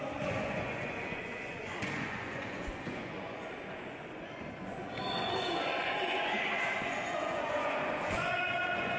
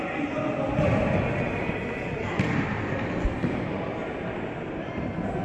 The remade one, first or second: first